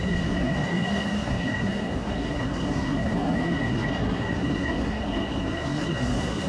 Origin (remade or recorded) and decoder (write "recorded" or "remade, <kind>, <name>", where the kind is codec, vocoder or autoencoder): remade, codec, SNAC